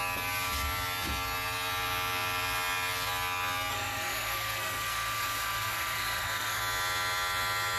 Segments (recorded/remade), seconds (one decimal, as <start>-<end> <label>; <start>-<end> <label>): 0.0-3.7 recorded; 3.7-6.6 remade; 6.6-7.8 recorded